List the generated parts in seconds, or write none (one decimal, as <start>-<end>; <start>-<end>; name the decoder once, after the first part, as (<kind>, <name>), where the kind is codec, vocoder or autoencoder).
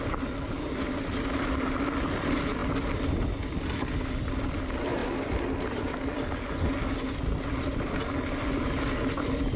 none